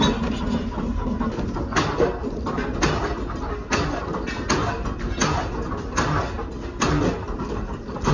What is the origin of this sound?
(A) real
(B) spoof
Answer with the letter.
A